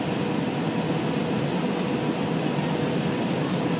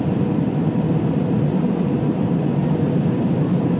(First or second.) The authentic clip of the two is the first